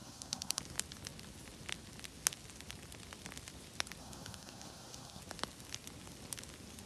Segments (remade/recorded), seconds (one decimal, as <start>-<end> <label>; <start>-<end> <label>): 0.0-0.6 remade; 0.6-4.0 recorded; 4.0-5.2 remade; 5.2-6.9 recorded